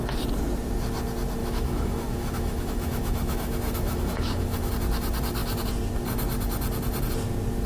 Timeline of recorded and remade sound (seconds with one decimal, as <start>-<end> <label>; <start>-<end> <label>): 0.0-1.4 recorded; 1.4-4.7 remade; 4.7-7.7 recorded